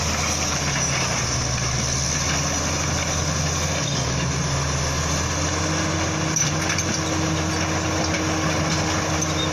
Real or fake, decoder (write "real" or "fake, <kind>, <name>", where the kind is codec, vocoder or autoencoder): real